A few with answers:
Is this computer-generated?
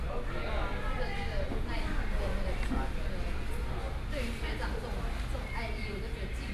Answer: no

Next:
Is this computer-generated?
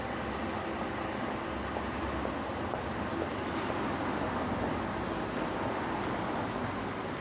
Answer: no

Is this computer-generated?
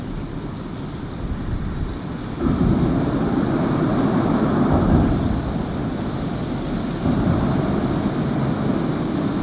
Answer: no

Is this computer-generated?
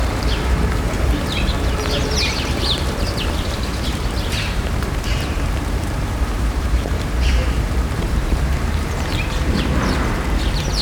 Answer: yes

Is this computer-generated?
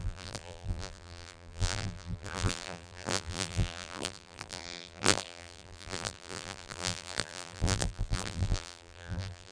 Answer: yes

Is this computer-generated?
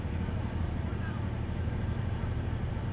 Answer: yes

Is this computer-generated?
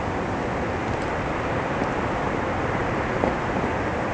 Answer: no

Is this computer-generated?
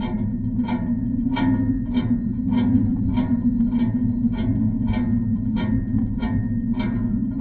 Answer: no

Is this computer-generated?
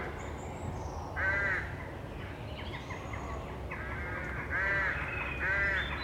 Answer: no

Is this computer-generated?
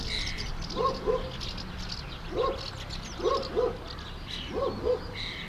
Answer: no